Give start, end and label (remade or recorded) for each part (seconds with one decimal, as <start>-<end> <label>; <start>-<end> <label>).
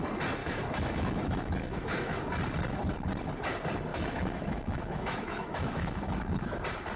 0.0-0.4 recorded; 0.4-2.2 remade; 2.2-3.9 recorded; 3.9-6.6 remade; 6.6-7.0 recorded